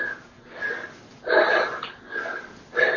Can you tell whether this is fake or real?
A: real